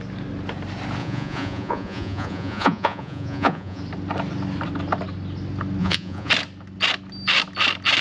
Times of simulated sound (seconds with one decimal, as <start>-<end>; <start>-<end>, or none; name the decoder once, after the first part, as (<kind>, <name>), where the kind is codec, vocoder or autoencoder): 1.0-3.8 (vocoder, Vocos); 5.8-6.3